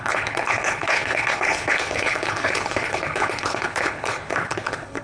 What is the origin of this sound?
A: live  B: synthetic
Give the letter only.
B